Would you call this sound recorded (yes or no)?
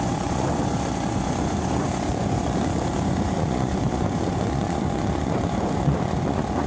no